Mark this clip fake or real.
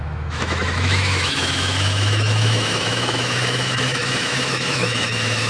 fake